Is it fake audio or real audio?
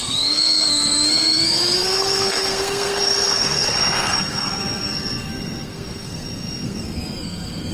fake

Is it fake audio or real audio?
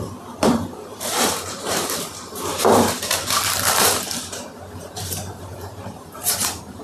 fake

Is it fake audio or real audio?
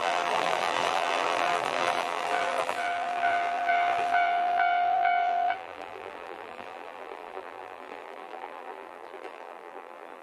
fake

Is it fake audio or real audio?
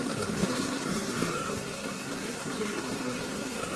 fake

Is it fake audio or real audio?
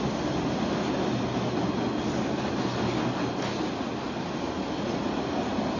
real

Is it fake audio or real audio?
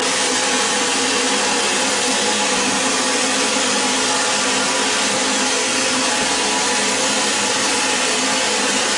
real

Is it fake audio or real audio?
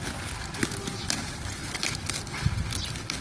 real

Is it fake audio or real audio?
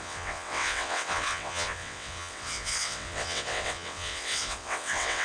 fake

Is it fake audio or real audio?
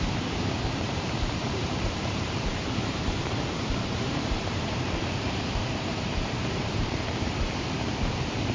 fake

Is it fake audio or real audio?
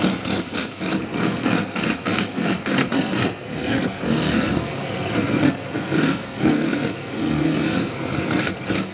fake